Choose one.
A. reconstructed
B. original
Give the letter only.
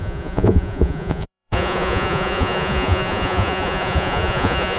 A